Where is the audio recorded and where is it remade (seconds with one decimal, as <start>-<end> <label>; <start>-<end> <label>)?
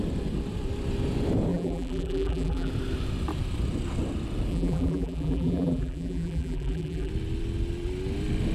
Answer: 0.0-1.5 recorded; 1.5-2.7 remade; 2.7-4.5 recorded; 4.5-7.1 remade; 7.1-8.5 recorded